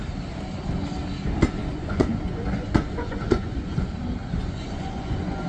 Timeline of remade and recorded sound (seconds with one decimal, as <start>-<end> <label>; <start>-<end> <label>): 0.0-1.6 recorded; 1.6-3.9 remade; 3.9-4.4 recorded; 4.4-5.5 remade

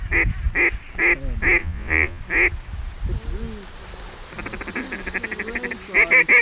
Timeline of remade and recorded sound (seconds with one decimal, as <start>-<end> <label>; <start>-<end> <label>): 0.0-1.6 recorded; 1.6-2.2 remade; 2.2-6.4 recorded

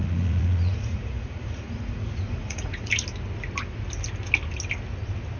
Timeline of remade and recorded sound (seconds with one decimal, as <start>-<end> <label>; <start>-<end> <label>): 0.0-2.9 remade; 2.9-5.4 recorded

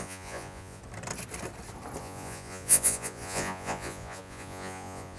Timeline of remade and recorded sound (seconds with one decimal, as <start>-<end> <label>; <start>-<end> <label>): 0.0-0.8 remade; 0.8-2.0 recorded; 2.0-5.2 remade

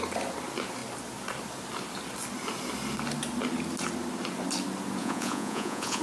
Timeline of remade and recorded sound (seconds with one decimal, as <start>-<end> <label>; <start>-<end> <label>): 0.0-5.0 recorded; 5.0-6.0 remade